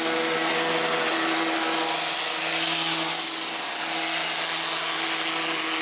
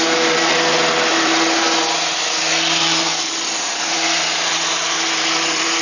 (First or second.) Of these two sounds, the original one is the first